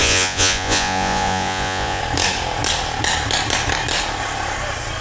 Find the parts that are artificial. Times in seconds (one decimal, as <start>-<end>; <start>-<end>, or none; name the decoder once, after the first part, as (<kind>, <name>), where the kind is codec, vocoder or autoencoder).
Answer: 0.0-2.0 (vocoder, Vocos)

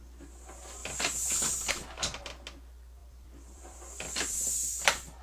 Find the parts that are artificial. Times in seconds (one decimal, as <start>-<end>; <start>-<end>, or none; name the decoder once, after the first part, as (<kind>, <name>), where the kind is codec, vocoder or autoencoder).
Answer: 3.0-5.2 (vocoder, BigVGAN v2)

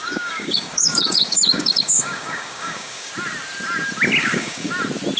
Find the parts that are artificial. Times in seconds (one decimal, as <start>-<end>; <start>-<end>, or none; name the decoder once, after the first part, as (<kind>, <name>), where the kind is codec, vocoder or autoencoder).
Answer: 0.0-3.1 (codec, DAC); 4.2-4.7

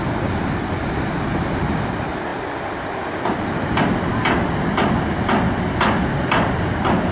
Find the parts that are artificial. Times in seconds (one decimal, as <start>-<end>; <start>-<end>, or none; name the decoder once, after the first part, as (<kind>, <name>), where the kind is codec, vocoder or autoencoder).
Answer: none

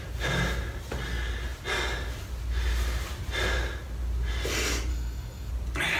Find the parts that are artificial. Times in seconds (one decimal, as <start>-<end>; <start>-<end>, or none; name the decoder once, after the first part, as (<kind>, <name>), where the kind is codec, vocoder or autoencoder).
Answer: 4.9-5.5 (codec, DAC)

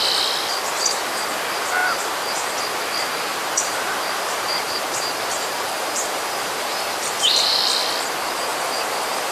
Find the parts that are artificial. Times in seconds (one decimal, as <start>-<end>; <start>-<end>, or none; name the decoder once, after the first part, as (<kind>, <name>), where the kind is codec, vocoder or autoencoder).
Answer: 1.8-2.6 (vocoder, BigVGAN v2); 3.3-7.6; 8.5-9.3